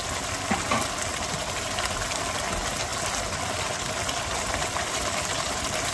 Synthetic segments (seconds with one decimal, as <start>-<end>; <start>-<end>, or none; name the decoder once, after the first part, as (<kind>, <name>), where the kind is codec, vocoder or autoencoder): none